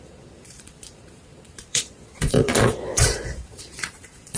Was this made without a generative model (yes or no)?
no